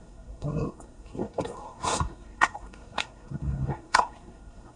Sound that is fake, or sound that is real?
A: fake